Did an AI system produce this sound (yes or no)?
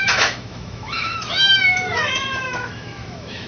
yes